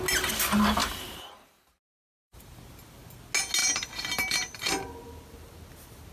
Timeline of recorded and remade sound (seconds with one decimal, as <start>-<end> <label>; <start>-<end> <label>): 0.0-0.8 recorded; 0.8-2.6 remade; 2.6-3.6 recorded; 3.6-4.7 remade; 4.7-6.1 recorded